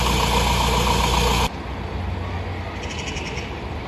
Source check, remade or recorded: recorded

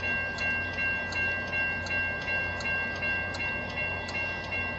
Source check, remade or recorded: recorded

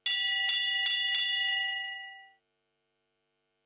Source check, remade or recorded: recorded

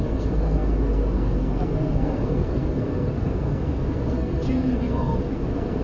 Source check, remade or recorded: remade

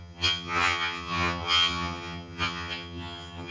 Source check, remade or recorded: remade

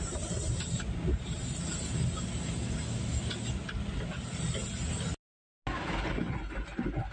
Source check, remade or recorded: recorded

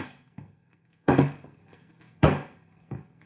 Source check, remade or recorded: remade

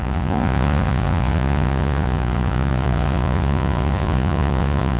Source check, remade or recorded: remade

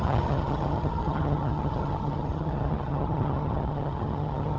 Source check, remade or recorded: remade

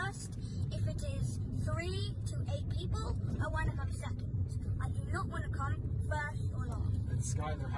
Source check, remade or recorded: remade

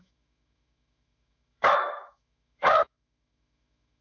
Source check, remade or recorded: remade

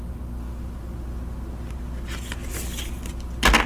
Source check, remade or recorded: recorded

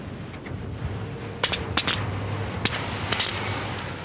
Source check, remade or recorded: recorded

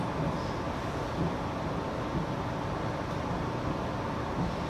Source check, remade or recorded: recorded